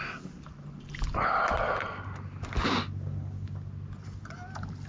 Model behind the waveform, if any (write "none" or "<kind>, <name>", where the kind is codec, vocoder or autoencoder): none